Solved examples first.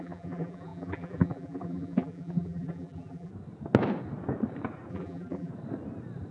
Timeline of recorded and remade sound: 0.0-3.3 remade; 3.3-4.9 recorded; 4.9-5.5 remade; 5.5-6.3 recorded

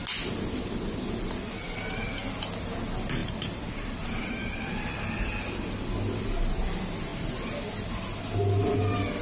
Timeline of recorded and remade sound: 0.0-3.2 recorded; 3.2-4.6 remade; 4.6-9.2 recorded

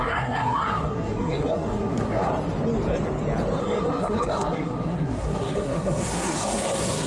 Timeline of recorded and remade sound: 0.0-2.3 remade; 2.3-3.6 recorded; 3.6-7.1 remade

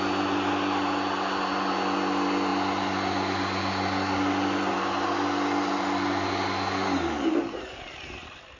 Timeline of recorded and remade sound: 0.0-8.6 recorded

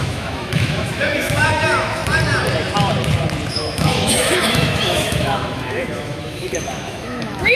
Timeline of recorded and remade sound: 0.0-2.0 remade; 2.0-3.5 recorded; 3.5-7.6 remade

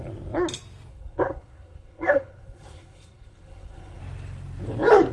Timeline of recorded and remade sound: 0.0-0.9 recorded; 0.9-4.0 remade; 4.0-5.1 recorded

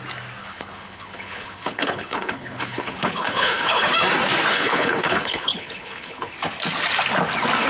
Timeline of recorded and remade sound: 0.0-0.4 recorded; 0.4-3.9 remade; 3.9-4.5 recorded; 4.5-6.3 remade; 6.3-7.7 recorded